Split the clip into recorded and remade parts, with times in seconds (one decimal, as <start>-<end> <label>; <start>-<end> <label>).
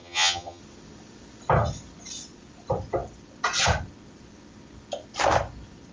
0.0-0.6 remade; 0.6-5.9 recorded